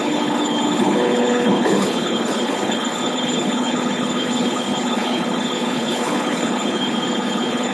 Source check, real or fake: fake